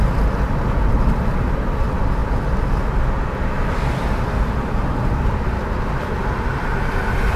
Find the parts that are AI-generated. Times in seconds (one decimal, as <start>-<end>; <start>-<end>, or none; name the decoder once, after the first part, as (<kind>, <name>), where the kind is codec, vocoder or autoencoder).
none